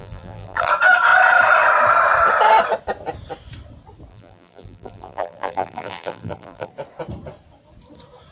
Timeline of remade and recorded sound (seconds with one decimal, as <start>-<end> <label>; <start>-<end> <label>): 0.0-0.7 remade; 0.7-4.1 recorded; 4.1-6.7 remade; 6.7-8.3 recorded